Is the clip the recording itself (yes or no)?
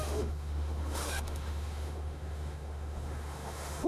no